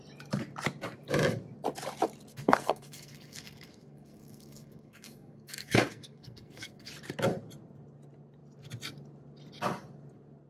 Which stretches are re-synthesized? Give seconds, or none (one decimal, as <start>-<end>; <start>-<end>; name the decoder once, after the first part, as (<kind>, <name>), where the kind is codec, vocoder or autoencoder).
2.3-6.9 (codec, SNAC)